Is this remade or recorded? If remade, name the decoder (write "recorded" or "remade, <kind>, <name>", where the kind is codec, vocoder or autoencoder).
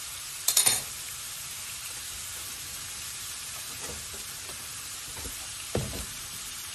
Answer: remade, vocoder, BigVGAN v2